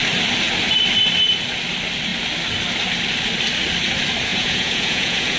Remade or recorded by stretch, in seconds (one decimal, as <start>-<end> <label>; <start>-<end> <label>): 0.0-4.3 recorded; 4.3-5.4 remade